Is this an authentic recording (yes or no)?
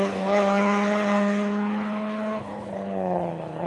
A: no